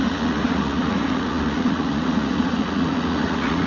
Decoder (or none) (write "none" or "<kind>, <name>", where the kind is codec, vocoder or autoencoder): vocoder, Vocos